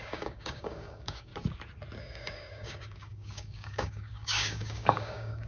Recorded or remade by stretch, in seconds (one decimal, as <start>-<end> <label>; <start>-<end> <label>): 0.0-1.3 remade; 1.3-2.0 recorded; 2.0-5.5 remade